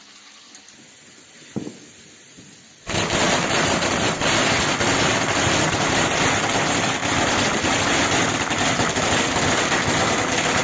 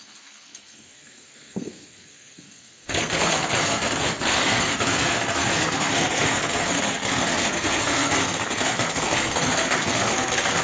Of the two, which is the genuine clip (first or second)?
first